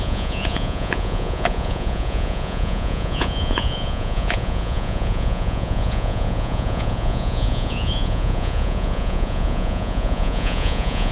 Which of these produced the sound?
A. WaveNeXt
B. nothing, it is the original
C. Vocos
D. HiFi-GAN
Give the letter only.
C